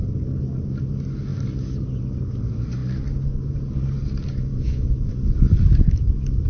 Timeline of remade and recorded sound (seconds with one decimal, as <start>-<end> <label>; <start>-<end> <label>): 0.0-4.5 recorded; 4.5-5.1 remade; 5.1-6.5 recorded